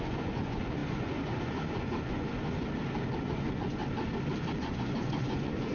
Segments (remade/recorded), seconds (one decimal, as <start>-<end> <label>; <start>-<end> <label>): 0.0-2.3 remade; 2.3-3.2 recorded; 3.2-3.8 remade; 3.8-4.6 recorded; 4.6-5.7 remade